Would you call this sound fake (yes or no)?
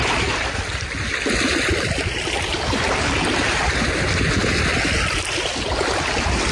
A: no